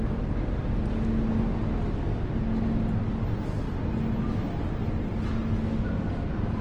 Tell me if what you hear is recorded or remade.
recorded